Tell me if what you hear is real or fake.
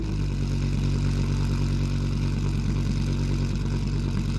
real